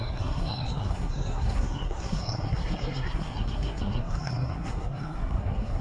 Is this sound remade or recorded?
remade